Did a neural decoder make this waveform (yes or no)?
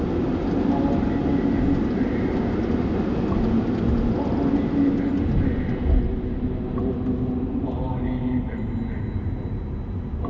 no